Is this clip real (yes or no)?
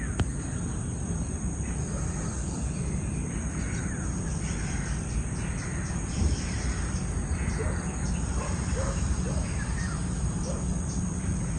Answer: yes